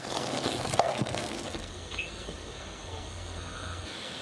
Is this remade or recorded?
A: remade